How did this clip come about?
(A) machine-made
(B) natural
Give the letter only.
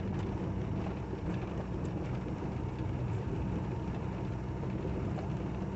A